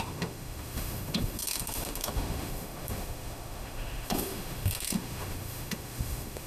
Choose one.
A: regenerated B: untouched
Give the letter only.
A